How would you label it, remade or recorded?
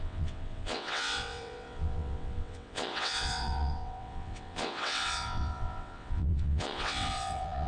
remade